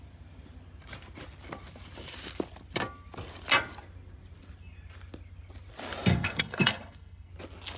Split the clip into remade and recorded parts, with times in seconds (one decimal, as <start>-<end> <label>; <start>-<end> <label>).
0.0-6.1 recorded; 6.1-7.3 remade; 7.3-7.8 recorded